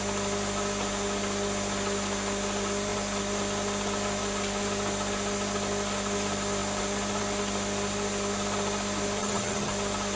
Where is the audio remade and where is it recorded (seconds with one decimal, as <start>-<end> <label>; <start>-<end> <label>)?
0.0-9.2 recorded; 9.2-9.7 remade; 9.7-10.2 recorded

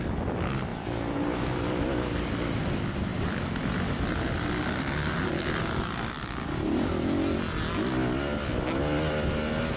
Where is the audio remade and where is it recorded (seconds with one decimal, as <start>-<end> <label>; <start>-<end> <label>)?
0.0-9.8 recorded